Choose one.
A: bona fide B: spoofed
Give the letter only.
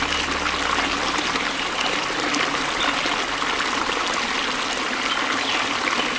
A